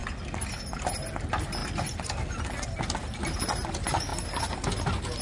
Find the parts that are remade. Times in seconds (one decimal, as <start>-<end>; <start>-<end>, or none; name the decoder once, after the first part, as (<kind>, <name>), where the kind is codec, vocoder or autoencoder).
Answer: 0.0-0.5 (vocoder, BigVGAN v2); 1.6-2.3